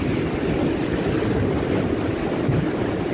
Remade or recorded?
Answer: recorded